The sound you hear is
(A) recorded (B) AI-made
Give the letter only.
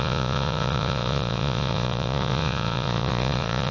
B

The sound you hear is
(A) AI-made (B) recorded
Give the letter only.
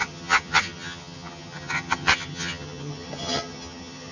A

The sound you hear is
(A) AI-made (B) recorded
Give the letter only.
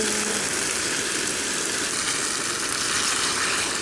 B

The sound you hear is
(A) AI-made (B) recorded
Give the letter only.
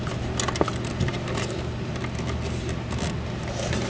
B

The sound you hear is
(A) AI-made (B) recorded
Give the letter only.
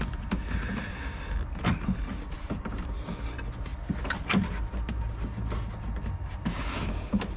B